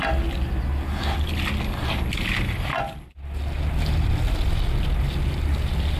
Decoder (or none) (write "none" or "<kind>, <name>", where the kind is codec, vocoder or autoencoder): none